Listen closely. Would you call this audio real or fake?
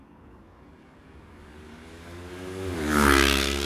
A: fake